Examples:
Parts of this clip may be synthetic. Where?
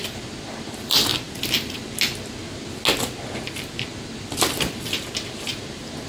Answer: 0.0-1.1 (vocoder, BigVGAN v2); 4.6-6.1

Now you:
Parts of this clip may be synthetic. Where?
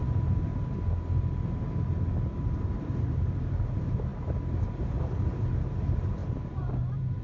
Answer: 0.0-0.5 (vocoder, BigVGAN v2); 2.2-4.1; 4.7-7.2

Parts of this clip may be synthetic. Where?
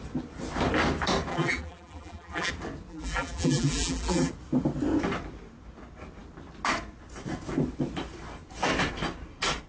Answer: 1.3-2.5 (vocoder, BigVGAN v2); 2.9-4.3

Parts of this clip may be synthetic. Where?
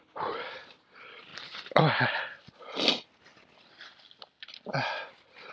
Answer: 1.3-1.8 (vocoder, BigVGAN v2)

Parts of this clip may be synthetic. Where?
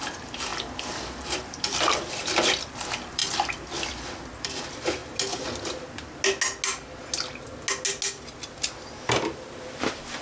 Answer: 0.0-5.0 (vocoder, BigVGAN v2); 9.0-10.2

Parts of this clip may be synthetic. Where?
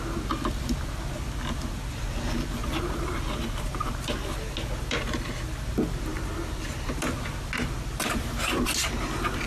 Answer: 2.6-3.3 (vocoder, BigVGAN v2)